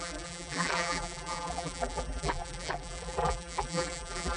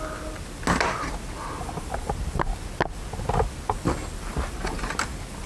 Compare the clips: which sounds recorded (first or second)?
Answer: second